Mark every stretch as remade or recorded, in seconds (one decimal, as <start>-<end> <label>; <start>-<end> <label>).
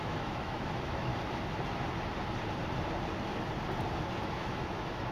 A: 0.0-1.1 remade; 1.1-4.2 recorded; 4.2-5.1 remade